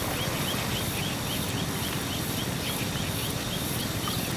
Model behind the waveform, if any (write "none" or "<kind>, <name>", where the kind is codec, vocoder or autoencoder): none